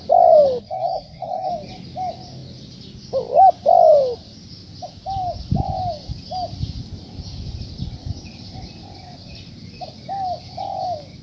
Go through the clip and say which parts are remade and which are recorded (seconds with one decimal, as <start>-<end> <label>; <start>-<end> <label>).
0.0-0.6 recorded; 0.6-1.5 remade; 1.5-11.2 recorded